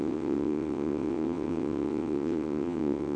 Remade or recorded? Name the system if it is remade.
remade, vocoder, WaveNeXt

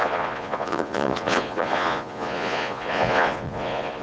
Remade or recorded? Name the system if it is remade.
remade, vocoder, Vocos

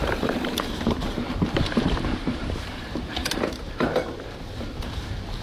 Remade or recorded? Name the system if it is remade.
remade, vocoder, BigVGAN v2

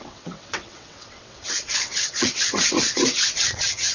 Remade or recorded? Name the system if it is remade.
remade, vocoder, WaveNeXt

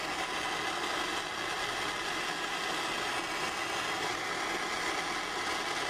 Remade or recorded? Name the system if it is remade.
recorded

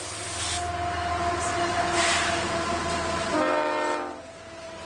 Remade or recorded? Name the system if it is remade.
recorded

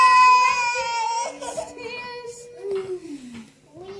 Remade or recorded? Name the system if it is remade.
recorded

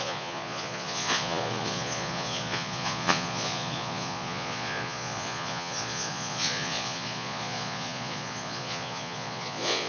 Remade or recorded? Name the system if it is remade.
remade, vocoder, Vocos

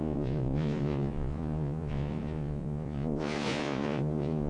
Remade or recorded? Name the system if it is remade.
remade, vocoder, Vocos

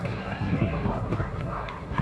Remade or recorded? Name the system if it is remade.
remade, codec, SNAC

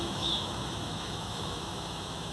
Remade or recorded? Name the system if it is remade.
remade, autoencoder, DAC-VAE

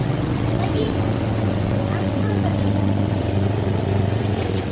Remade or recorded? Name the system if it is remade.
remade, vocoder, WaveNeXt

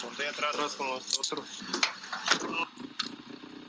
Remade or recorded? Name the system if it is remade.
recorded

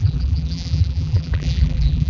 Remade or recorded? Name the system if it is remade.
remade, vocoder, BigVGAN v2